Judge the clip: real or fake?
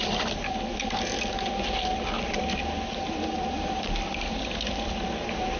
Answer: fake